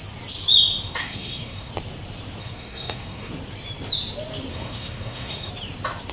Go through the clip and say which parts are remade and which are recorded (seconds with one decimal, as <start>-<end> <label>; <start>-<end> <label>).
0.0-1.0 recorded; 1.0-1.7 remade; 1.7-2.4 recorded; 2.4-3.3 remade; 3.3-4.5 recorded; 4.5-5.5 remade; 5.5-6.1 recorded